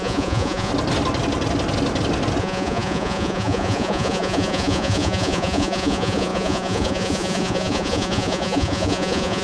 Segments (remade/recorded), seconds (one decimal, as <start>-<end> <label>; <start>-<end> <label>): 0.0-0.7 remade; 0.7-2.4 recorded; 2.4-9.4 remade